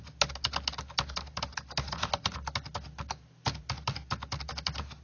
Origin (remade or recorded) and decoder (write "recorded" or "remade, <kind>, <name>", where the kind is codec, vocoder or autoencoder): recorded